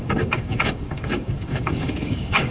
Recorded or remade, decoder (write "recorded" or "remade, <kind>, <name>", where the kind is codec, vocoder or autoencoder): remade, codec, DAC